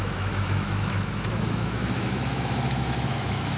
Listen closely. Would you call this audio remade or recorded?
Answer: remade